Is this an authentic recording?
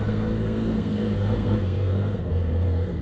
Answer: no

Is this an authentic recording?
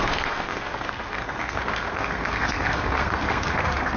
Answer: no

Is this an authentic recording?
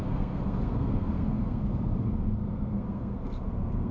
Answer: no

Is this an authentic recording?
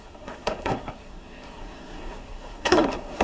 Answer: no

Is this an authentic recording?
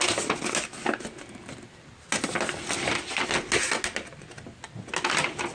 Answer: yes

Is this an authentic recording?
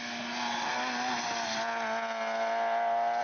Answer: yes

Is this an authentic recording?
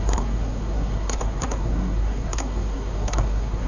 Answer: no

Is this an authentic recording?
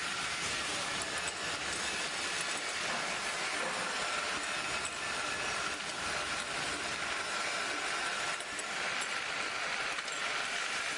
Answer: yes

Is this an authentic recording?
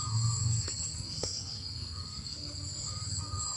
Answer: no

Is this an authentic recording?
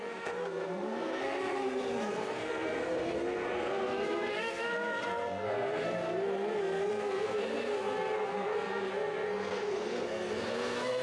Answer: no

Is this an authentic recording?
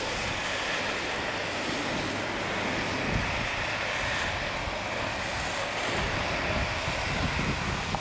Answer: yes